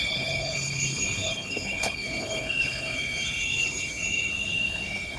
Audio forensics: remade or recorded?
remade